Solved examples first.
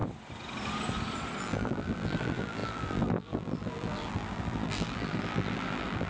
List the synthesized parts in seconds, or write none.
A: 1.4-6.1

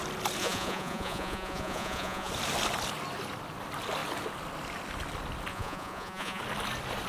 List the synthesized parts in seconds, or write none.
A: 0.4-2.3; 5.5-6.4

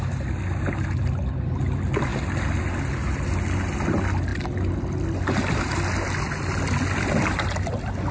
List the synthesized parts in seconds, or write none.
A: none

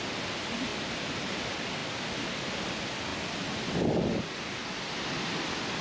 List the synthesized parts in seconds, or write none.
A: 0.7-1.4